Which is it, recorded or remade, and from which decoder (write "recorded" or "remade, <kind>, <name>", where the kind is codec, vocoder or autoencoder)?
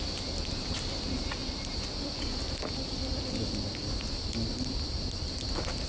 recorded